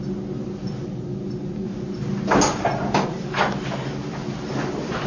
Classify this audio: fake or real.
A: real